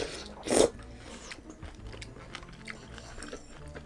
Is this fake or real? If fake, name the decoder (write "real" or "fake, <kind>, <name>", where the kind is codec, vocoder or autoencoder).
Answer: real